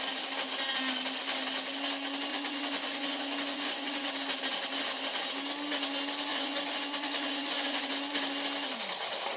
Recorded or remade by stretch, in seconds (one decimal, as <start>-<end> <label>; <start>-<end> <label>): 0.0-2.3 recorded; 2.3-4.1 remade; 4.1-6.3 recorded; 6.3-7.9 remade; 7.9-9.4 recorded